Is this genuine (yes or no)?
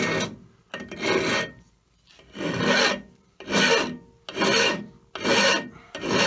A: yes